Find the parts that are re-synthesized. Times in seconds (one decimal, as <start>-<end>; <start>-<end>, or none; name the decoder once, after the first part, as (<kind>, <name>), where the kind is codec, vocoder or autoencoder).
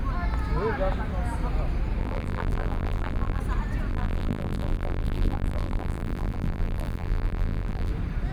2.0-3.4 (vocoder, BigVGAN v2); 3.9-7.9